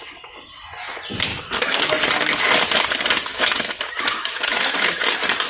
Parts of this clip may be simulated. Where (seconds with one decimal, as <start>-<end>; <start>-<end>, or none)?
1.3-1.9; 3.3-5.0